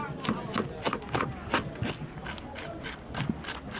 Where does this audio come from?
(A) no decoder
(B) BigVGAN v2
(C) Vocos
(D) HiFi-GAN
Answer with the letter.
A